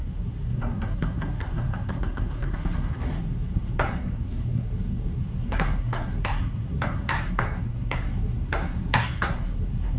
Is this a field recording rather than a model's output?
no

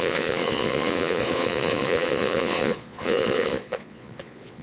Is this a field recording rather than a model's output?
no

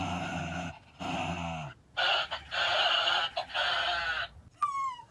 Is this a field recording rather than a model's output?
yes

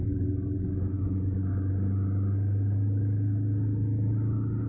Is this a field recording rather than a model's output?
yes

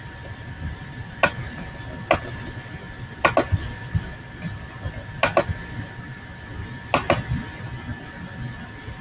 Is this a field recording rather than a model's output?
yes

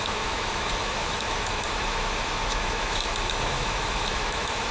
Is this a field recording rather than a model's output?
no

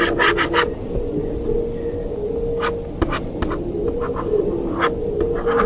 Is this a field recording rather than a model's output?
yes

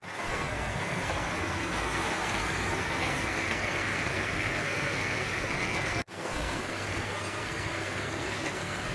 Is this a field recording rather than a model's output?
no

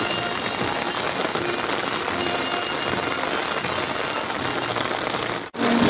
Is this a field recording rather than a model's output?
yes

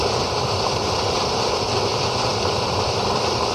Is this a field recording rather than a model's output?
no